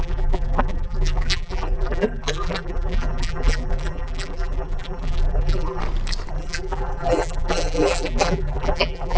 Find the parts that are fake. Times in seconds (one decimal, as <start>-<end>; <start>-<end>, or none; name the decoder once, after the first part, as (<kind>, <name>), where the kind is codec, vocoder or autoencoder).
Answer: 0.0-5.8 (vocoder, BigVGAN v2); 6.3-9.2